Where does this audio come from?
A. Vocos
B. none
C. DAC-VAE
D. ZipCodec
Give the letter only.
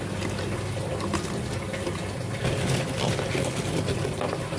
B